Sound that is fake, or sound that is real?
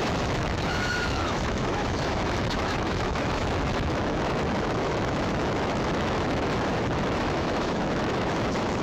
fake